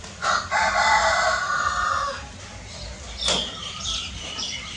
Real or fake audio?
real